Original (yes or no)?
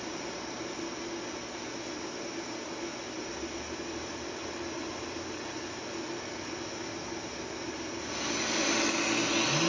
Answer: yes